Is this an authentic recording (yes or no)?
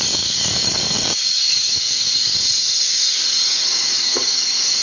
no